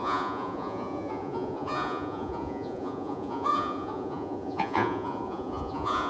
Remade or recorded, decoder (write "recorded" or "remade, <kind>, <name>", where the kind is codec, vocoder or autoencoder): remade, vocoder, Vocos